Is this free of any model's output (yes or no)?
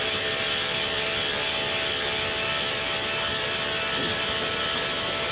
yes